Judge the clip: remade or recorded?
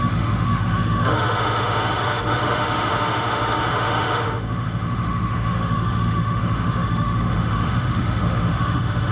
remade